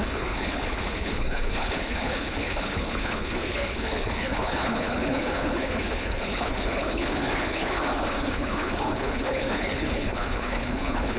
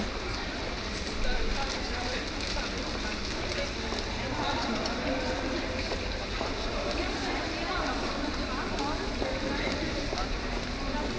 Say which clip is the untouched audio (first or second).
second